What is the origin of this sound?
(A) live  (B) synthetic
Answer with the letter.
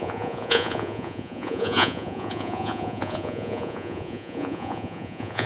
B